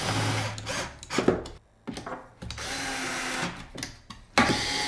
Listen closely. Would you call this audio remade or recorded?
recorded